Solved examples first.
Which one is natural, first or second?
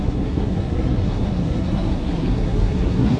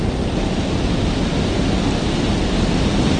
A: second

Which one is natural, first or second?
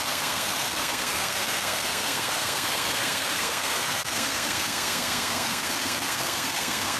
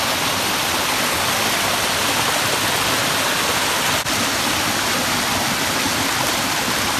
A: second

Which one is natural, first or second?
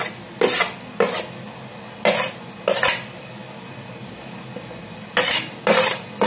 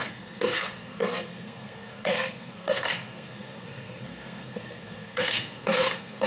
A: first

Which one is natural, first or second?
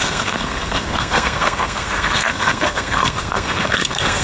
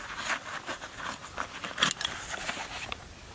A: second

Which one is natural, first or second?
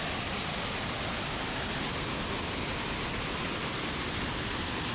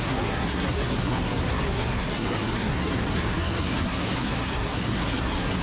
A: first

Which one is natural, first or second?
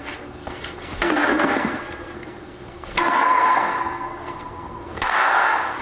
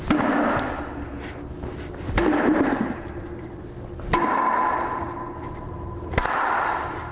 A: second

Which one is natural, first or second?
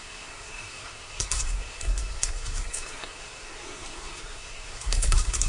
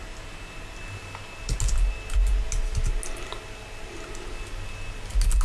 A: second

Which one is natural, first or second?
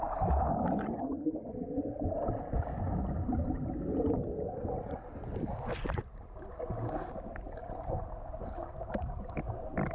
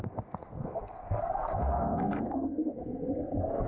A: first